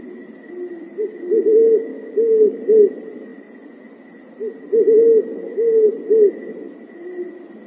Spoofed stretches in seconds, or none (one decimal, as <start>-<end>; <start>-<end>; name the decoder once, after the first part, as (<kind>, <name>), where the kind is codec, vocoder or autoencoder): 1.9-2.6 (codec, DAC)